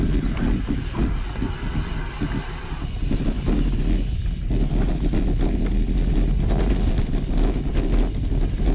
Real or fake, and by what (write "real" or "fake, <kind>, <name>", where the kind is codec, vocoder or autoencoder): real